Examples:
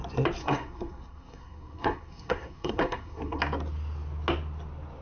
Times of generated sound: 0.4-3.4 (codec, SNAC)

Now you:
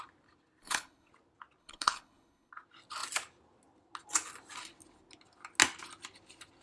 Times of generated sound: 0.6-1.1 (codec, HILCodec); 1.6-2.5